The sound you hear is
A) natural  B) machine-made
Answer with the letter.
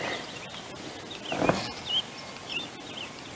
A